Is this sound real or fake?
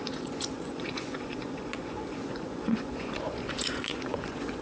fake